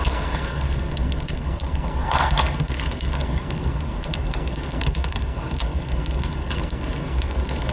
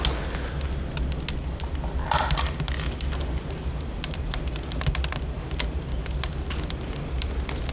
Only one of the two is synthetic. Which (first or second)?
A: first